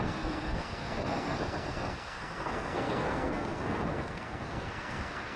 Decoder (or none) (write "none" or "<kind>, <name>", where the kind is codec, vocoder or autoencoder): codec, SNAC